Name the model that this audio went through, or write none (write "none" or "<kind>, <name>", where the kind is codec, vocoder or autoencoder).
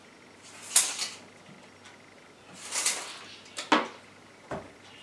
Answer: none